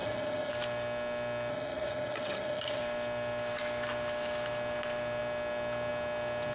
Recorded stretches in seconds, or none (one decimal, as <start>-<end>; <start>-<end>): 0.5-1.5; 2.8-6.5